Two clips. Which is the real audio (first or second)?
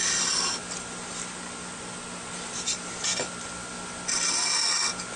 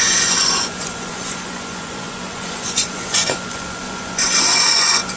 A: first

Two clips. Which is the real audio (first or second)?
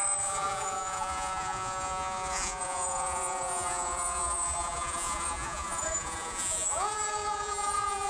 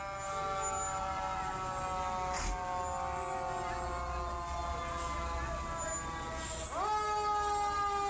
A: second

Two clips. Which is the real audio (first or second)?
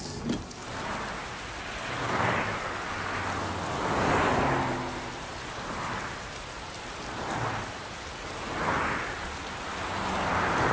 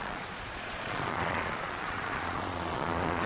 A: first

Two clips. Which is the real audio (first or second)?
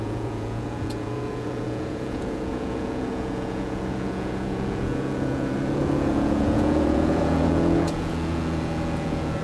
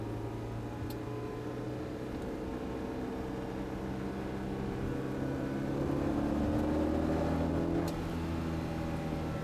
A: second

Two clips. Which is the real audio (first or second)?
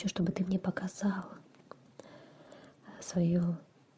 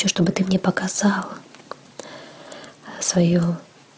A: second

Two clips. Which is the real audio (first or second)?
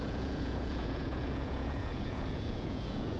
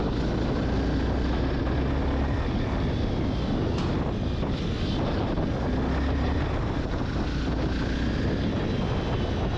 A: second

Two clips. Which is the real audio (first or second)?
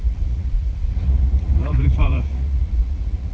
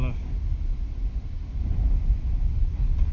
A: second